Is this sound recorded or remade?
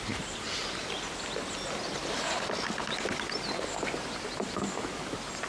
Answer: recorded